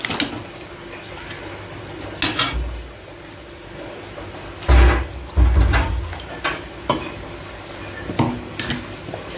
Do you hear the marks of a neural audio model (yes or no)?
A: no